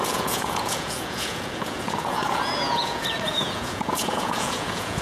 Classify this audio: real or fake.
fake